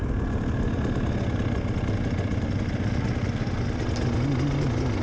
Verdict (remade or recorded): recorded